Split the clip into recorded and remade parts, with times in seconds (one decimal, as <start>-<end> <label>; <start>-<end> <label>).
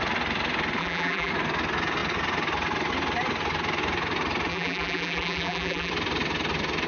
0.0-0.8 recorded; 0.8-1.3 remade; 1.3-4.5 recorded; 4.5-5.9 remade; 5.9-6.9 recorded